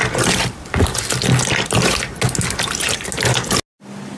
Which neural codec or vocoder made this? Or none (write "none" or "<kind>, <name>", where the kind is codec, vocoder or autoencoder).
none